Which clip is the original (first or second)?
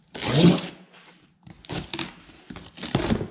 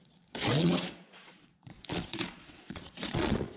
first